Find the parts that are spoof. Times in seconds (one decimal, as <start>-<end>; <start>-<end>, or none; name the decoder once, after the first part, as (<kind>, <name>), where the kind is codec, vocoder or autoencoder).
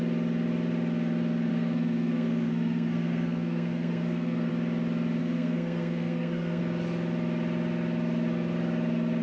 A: 1.5-4.5 (codec, SNAC); 5.2-6.6